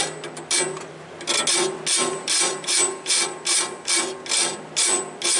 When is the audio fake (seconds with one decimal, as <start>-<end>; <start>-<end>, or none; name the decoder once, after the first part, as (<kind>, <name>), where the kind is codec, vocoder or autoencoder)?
2.1-3.1 (vocoder, BigVGAN v2)